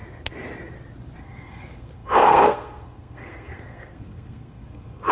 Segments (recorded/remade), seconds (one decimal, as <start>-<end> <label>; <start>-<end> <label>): 0.0-1.2 recorded; 1.2-5.1 remade